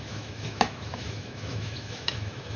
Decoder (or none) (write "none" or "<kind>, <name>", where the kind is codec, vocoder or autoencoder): autoencoder, DAC-VAE